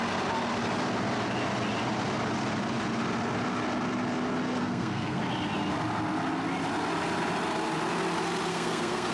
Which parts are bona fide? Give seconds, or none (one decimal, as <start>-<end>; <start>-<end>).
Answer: 0.0-4.6; 5.2-8.5